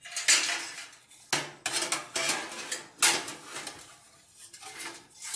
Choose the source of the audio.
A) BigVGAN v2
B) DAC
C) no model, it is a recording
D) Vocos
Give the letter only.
C